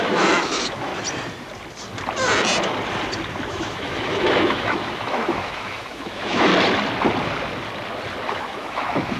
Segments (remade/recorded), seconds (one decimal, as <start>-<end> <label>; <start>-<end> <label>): 0.0-0.9 remade; 0.9-3.5 recorded; 3.5-6.5 remade; 6.5-8.3 recorded; 8.3-9.2 remade